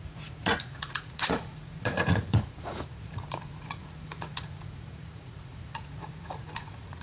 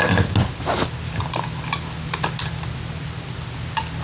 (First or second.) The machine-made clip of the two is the first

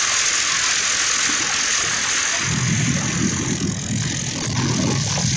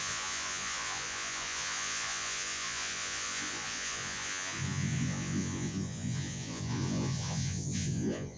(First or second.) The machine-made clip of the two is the second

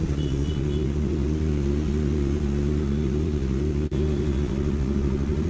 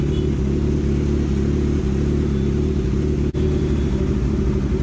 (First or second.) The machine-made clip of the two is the first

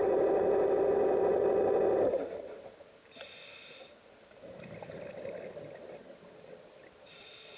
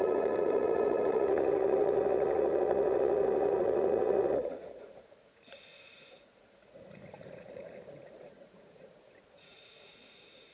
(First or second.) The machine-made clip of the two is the second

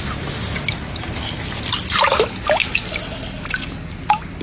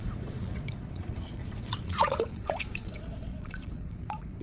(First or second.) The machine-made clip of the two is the second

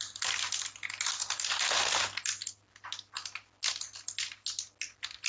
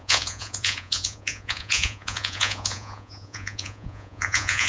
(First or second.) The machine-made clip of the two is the second